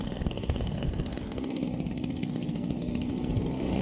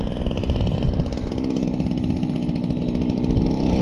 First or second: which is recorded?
second